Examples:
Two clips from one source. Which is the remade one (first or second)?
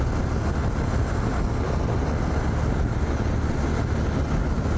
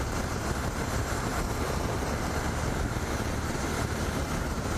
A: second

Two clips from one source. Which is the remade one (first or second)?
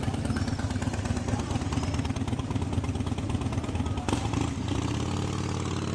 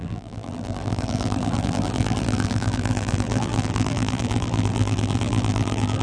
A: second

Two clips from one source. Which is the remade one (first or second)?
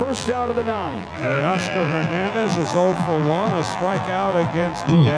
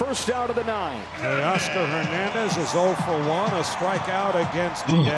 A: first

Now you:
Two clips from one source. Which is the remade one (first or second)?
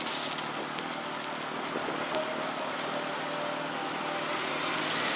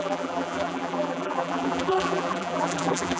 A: second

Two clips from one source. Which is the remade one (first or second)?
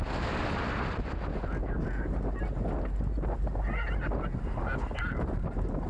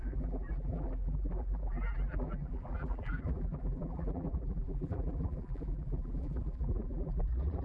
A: second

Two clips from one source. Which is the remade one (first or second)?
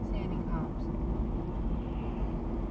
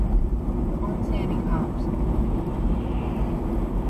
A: second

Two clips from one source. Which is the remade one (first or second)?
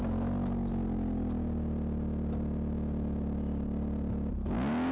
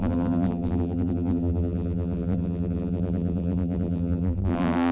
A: second